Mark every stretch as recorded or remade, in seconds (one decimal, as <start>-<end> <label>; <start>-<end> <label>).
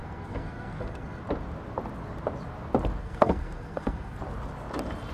0.0-1.2 remade; 1.2-3.0 recorded; 3.0-4.2 remade; 4.2-5.1 recorded